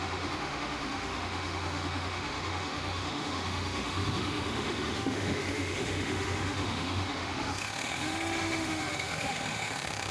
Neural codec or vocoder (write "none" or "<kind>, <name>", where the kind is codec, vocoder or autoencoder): autoencoder, DAC-VAE